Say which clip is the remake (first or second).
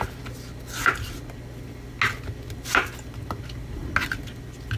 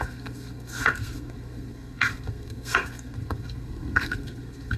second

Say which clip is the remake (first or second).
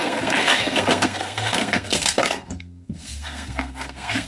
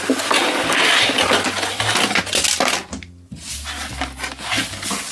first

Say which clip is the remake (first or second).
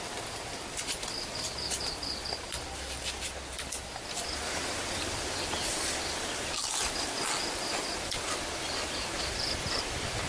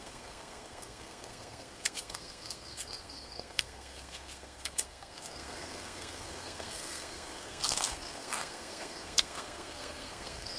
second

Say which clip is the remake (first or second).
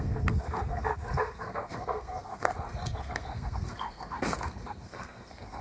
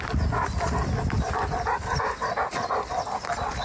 first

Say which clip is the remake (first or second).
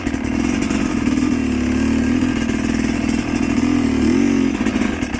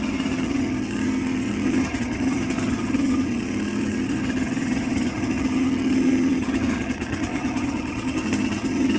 second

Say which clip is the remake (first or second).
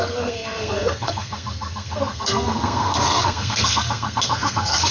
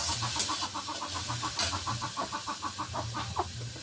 first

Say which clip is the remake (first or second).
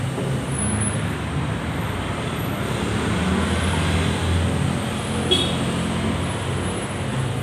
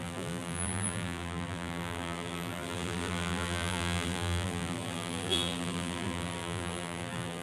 second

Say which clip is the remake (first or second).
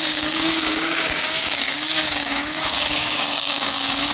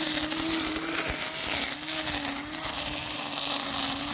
first